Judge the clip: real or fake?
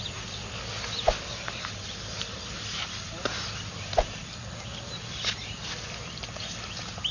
real